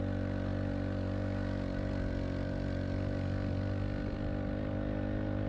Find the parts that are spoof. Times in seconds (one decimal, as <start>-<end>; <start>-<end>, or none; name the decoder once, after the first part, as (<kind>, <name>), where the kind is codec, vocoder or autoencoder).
none